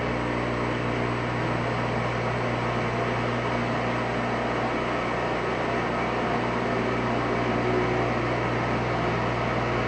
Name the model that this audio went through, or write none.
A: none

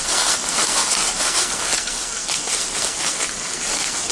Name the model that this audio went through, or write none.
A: codec, SNAC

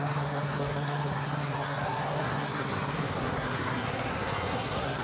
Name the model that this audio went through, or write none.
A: codec, SNAC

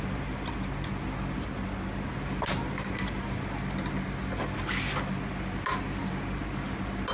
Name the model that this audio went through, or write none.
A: none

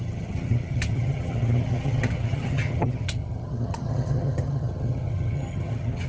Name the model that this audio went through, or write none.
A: vocoder, HiFi-GAN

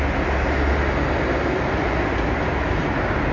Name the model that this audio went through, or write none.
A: none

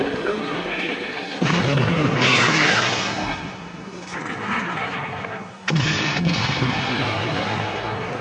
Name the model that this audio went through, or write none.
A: codec, SNAC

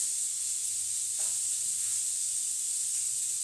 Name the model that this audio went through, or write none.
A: none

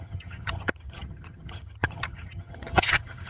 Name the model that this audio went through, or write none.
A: vocoder, HiFi-GAN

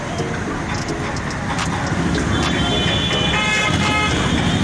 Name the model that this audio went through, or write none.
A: none